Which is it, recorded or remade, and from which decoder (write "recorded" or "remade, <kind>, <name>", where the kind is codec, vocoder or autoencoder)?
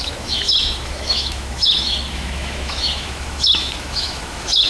remade, autoencoder, DAC-VAE